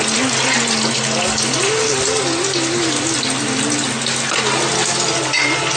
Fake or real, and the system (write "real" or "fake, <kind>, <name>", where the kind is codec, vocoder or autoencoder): real